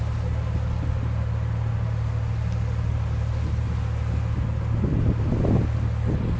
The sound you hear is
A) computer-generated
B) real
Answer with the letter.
B